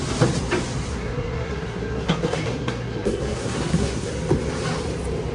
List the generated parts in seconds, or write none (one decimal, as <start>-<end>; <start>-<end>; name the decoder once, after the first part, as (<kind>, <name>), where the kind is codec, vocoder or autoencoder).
0.9-4.1 (codec, SNAC)